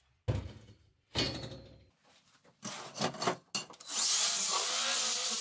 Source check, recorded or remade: recorded